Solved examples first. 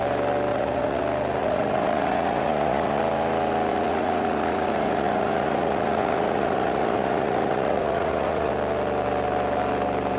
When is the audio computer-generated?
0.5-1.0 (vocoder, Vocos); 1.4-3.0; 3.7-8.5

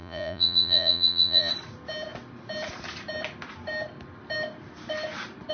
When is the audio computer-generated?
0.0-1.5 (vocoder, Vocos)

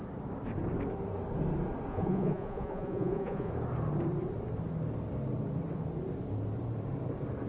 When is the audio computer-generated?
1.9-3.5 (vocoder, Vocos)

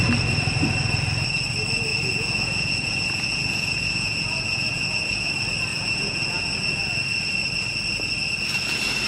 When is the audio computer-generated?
1.9-5.3 (vocoder, Vocos); 5.7-6.8

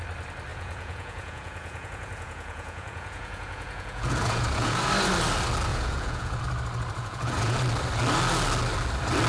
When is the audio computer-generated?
0.5-4.9 (vocoder, Vocos); 5.7-6.4; 7.0-7.6

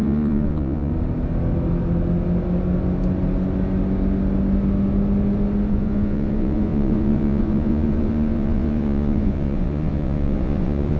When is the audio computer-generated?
0.0-0.9 (vocoder, Vocos); 5.7-11.0